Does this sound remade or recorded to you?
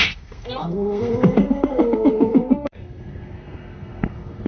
remade